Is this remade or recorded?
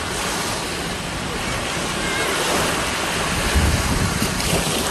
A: recorded